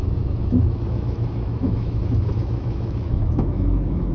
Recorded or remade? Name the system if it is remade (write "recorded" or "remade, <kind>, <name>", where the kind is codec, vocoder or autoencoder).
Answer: remade, autoencoder, DAC-VAE